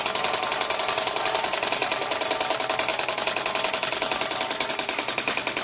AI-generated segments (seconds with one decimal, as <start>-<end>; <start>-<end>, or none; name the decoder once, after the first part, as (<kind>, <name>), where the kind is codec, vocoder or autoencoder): none